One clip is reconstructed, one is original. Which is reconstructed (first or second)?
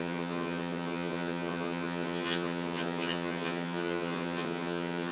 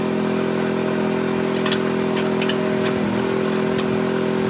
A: first